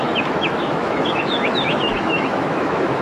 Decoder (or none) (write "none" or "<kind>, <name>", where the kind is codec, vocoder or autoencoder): autoencoder, DAC-VAE